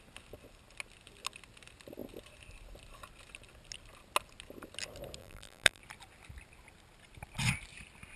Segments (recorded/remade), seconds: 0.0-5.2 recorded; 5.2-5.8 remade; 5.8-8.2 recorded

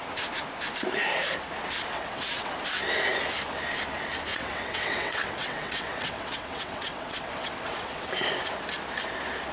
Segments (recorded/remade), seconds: 0.0-1.9 recorded; 1.9-2.5 remade; 2.5-4.3 recorded; 4.3-8.1 remade; 8.1-9.5 recorded

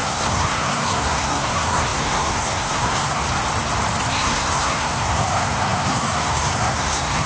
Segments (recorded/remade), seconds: 0.0-3.2 remade; 3.2-4.1 recorded; 4.1-7.3 remade

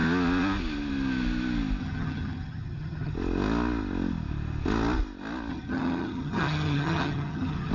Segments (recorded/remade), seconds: 0.0-1.8 recorded; 1.8-3.1 remade; 3.1-5.5 recorded; 5.5-7.7 remade

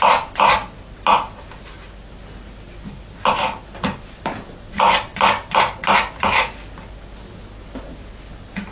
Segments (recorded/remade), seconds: 0.0-8.7 recorded

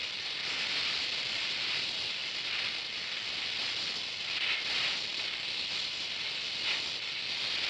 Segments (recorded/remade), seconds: 0.0-7.7 recorded

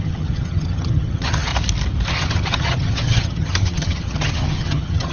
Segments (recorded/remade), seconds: 0.0-1.5 remade; 1.5-2.1 recorded; 2.1-5.1 remade

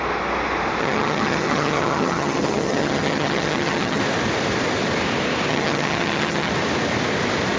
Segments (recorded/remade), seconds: 0.0-0.8 recorded; 0.8-4.0 remade; 4.0-5.5 recorded; 5.5-6.5 remade; 6.5-7.6 recorded